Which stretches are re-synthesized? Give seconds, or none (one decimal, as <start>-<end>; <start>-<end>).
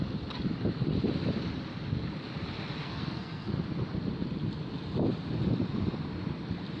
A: 2.8-3.5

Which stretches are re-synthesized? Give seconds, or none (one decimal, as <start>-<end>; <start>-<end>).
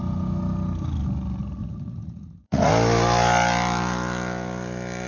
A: 1.6-2.7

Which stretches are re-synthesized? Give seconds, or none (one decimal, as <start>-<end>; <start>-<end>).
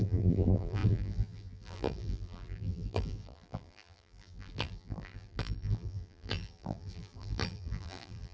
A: 0.0-8.3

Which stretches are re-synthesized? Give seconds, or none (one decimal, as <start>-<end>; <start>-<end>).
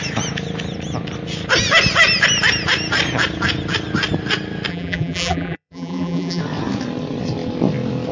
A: 4.7-6.4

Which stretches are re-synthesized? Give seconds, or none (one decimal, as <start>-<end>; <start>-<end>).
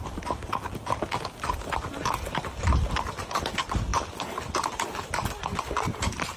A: none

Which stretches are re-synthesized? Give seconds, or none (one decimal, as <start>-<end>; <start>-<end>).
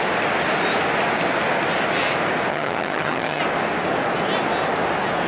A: 2.5-3.4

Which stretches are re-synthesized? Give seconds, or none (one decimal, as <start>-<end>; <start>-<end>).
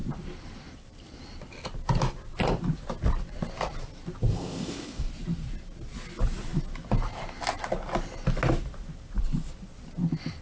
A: 4.3-5.1